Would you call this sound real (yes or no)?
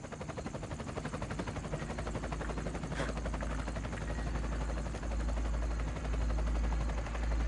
yes